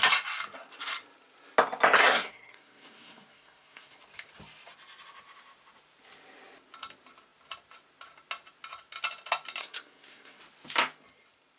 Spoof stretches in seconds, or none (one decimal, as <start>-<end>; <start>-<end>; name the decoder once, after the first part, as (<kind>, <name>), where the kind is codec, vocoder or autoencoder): 2.0-4.0 (codec, SNAC); 9.6-10.4